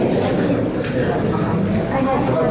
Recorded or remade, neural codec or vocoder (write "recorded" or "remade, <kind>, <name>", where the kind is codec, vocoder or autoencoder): recorded